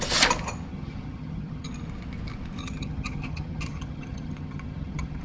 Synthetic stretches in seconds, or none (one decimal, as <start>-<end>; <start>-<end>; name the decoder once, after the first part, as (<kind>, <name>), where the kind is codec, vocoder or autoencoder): 0.7-1.7 (vocoder, HiFi-GAN); 2.6-5.2